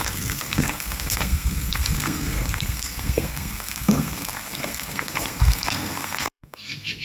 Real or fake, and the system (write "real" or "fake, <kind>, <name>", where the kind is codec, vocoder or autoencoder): fake, codec, SNAC